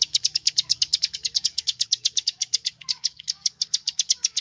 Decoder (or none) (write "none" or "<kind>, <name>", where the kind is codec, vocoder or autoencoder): codec, DAC